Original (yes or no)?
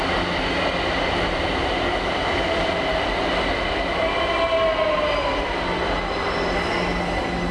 yes